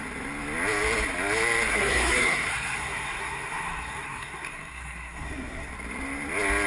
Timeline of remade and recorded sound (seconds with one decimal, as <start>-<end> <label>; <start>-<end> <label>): 0.0-1.7 recorded; 1.7-5.7 remade; 5.7-6.7 recorded